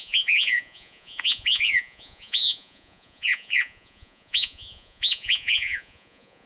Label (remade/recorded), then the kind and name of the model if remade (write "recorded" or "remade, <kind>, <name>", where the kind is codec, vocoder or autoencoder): remade, vocoder, Vocos